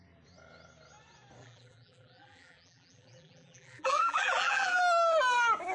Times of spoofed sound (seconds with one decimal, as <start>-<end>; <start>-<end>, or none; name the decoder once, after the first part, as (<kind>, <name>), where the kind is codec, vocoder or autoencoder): 1.4-4.8 (vocoder, BigVGAN v2)